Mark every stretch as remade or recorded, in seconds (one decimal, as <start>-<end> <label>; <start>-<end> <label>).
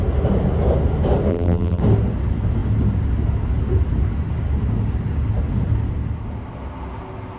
0.0-1.3 recorded; 1.3-1.8 remade; 1.8-7.4 recorded